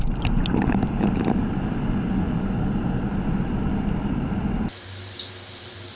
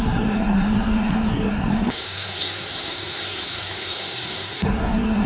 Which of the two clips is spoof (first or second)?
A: second